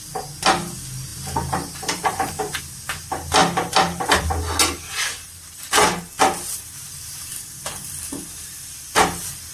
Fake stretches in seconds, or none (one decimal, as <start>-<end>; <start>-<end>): 1.1-2.6